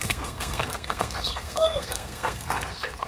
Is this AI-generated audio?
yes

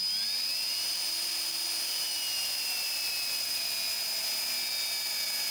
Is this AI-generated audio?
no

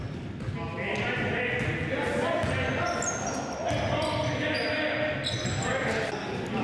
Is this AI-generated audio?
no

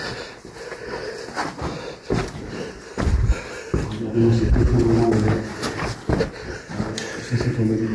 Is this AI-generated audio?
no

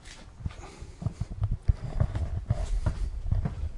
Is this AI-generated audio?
no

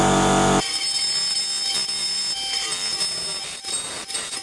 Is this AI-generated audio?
no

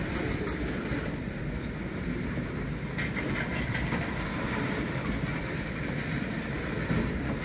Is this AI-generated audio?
no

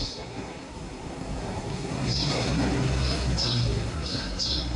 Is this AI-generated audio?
yes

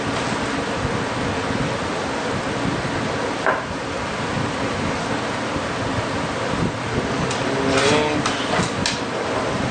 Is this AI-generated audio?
no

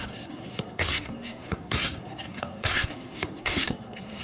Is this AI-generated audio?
yes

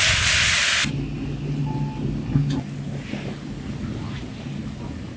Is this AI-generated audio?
no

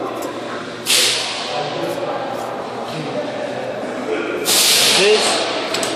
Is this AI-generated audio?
no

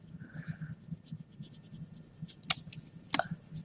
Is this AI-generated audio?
no